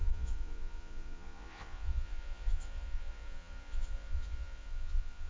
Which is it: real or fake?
fake